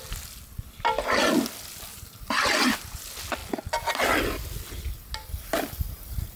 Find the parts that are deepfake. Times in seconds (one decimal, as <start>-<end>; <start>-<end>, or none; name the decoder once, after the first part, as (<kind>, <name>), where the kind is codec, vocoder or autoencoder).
1.9-3.0 (vocoder, BigVGAN v2)